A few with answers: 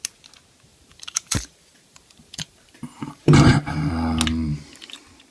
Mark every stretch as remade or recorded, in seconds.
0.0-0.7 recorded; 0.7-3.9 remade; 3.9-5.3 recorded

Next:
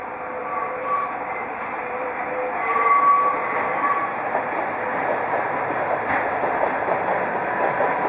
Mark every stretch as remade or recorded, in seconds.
0.0-0.4 recorded; 0.4-2.2 remade; 2.2-8.1 recorded

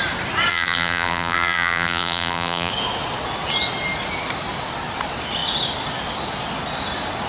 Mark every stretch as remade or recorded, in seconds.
0.0-0.5 recorded; 0.5-2.7 remade; 2.7-7.3 recorded

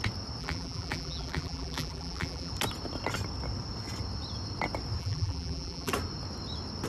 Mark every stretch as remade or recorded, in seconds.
0.0-0.4 recorded; 0.4-2.5 remade; 2.5-5.0 recorded; 5.0-5.9 remade; 5.9-6.9 recorded

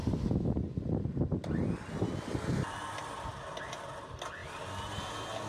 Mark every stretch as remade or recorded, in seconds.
0.0-5.5 recorded